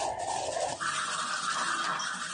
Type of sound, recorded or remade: recorded